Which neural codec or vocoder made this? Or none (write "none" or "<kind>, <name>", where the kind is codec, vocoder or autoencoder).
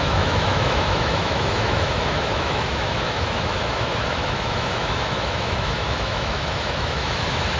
autoencoder, DAC-VAE